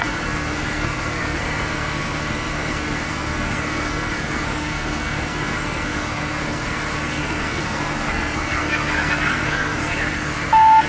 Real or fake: fake